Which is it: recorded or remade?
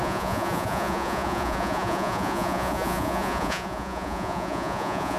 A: remade